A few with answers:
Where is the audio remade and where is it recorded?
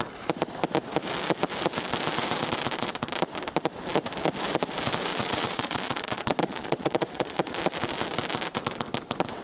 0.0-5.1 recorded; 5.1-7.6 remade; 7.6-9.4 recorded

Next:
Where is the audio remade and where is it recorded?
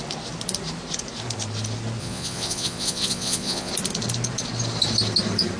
0.0-2.0 recorded; 2.0-3.7 remade; 3.7-5.6 recorded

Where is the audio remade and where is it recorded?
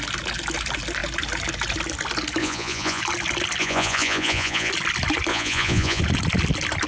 0.0-2.4 recorded; 2.4-3.0 remade; 3.0-3.6 recorded; 3.6-4.7 remade; 4.7-5.3 recorded; 5.3-6.0 remade; 6.0-6.9 recorded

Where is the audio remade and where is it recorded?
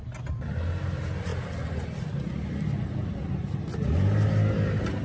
0.0-5.0 recorded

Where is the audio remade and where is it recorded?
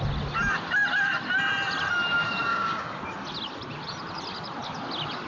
0.0-2.5 recorded; 2.5-3.0 remade; 3.0-5.3 recorded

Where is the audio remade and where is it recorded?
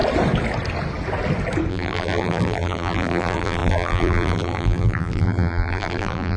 0.0-1.7 recorded; 1.7-6.4 remade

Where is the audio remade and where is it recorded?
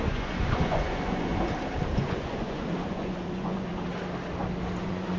0.0-1.3 remade; 1.3-1.9 recorded; 1.9-3.7 remade; 3.7-4.8 recorded; 4.8-5.2 remade